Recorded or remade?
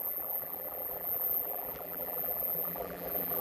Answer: remade